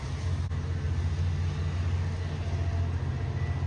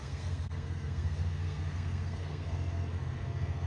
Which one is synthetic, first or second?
second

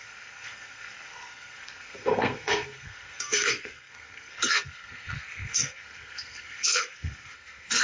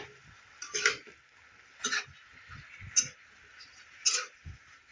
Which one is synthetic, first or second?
first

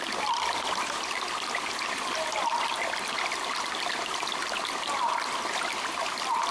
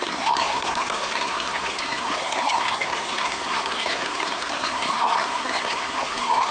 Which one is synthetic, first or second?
second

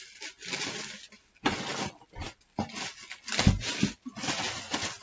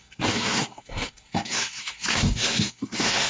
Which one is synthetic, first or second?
second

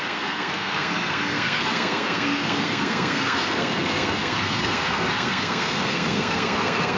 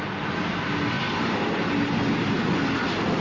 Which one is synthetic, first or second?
first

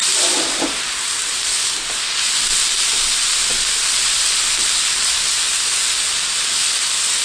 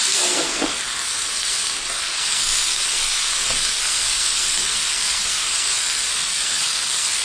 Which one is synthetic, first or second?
second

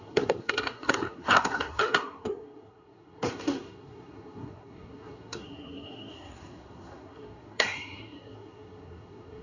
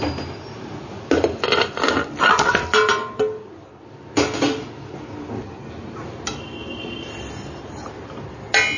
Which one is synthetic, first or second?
first